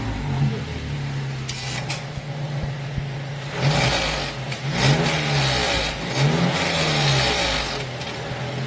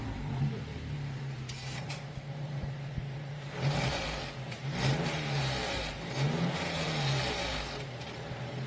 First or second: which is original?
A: first